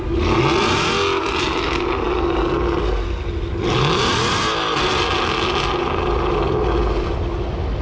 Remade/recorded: recorded